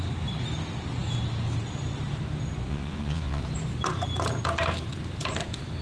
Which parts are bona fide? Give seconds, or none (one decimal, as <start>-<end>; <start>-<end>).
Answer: 0.0-2.7; 3.4-5.8